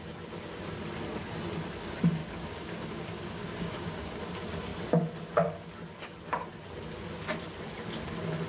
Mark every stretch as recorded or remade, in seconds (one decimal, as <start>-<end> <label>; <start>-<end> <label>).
0.0-2.2 recorded; 2.2-4.2 remade; 4.2-8.5 recorded